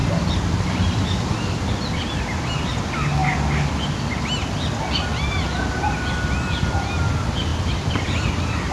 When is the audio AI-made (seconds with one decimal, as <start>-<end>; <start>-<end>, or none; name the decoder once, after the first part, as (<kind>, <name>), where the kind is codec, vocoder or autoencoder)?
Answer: 0.0-1.7 (vocoder, BigVGAN v2); 7.5-8.7